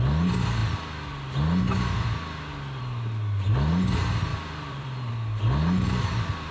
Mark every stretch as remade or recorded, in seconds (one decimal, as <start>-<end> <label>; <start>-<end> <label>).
0.0-4.3 recorded; 4.3-5.1 remade; 5.1-6.5 recorded